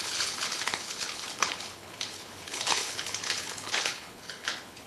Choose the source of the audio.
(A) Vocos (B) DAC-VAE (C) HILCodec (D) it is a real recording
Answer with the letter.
C